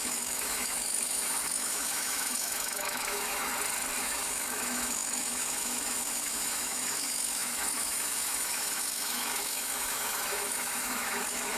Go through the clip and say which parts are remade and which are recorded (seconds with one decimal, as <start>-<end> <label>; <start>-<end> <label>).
0.0-3.5 remade; 3.5-4.0 recorded; 4.0-11.6 remade